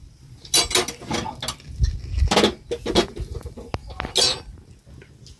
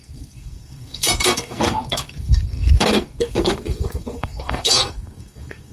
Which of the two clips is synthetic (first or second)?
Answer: second